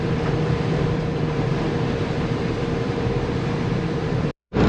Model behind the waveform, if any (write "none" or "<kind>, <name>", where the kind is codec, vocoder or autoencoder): vocoder, BigVGAN v2